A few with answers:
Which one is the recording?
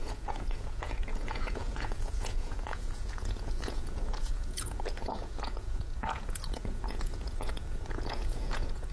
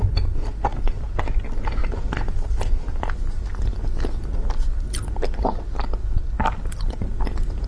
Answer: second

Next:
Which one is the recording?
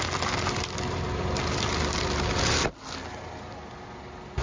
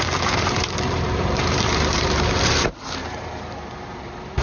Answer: first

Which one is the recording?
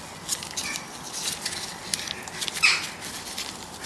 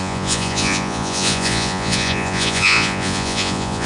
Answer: first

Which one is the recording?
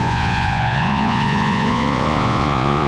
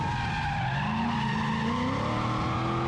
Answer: second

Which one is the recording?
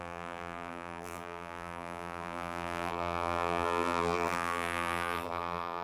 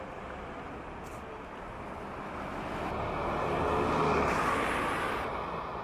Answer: second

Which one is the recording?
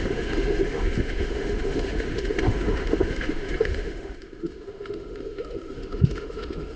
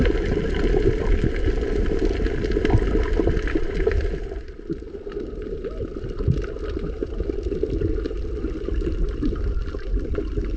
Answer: second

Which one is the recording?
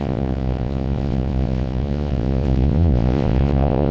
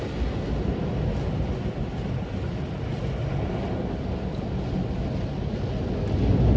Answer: second